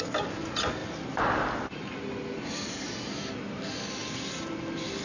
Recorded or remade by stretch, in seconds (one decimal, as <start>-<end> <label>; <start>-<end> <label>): 0.0-5.0 recorded